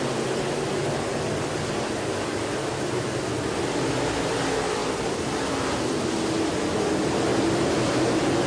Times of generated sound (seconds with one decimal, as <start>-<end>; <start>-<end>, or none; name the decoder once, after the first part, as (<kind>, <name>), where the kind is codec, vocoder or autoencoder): 2.7-3.9 (vocoder, BigVGAN v2); 4.8-5.4; 7.3-7.8